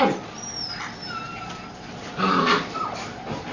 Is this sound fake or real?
fake